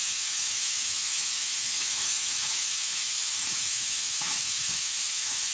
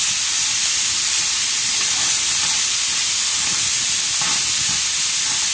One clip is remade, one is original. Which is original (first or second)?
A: second